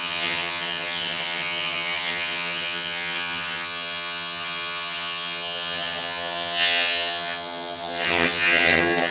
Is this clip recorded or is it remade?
remade